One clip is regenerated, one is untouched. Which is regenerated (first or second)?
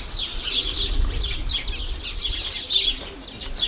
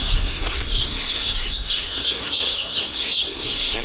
second